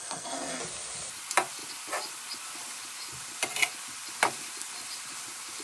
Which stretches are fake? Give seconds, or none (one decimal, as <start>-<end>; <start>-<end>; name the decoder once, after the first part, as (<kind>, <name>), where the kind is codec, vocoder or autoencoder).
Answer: 0.0-0.6 (codec, SNAC)